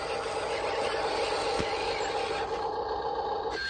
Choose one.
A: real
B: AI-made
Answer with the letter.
A